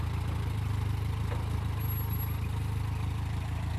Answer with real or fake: real